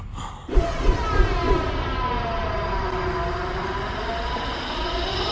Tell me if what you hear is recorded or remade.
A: recorded